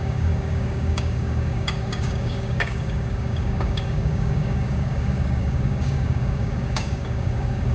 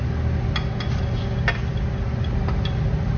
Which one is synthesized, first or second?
first